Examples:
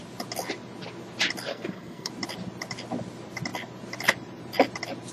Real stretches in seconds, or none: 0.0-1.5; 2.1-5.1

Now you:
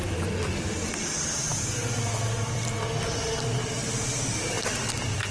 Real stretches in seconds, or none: 0.0-5.3

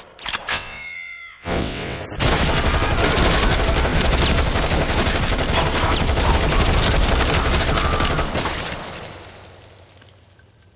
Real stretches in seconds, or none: 0.0-0.5; 2.0-10.8

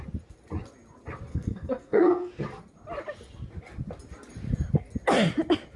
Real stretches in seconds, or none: 0.0-1.3; 2.3-5.8

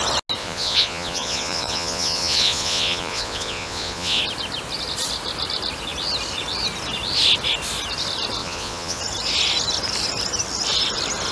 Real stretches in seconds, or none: 0.0-0.4; 4.2-8.4; 9.0-11.3

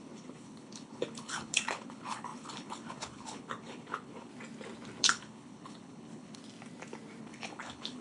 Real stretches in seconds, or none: 4.3-5.0; 6.4-7.2

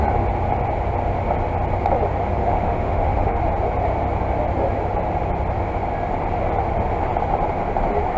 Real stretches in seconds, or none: 0.0-2.4; 3.4-8.2

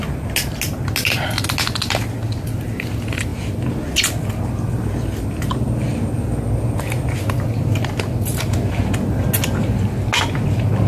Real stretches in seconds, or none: 0.0-10.9